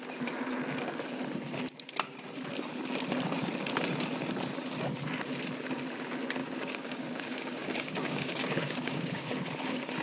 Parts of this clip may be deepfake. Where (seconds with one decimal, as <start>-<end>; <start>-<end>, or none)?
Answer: 6.4-9.3